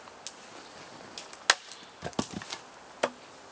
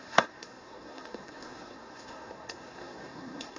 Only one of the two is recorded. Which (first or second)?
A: first